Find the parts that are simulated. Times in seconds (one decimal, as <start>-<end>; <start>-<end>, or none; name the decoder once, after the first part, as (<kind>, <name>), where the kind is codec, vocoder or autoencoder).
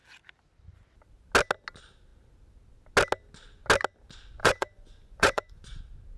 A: 4.4-5.8 (vocoder, Vocos)